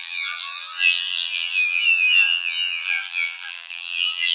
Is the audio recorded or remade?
remade